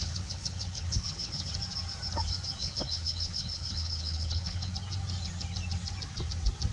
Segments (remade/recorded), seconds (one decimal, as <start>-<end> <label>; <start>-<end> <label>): 0.0-1.5 remade; 1.5-2.6 recorded; 2.6-4.7 remade; 4.7-6.7 recorded